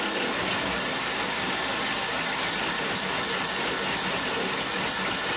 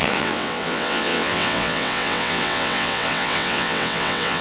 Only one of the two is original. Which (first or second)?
first